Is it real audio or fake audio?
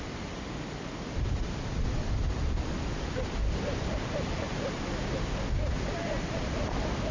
real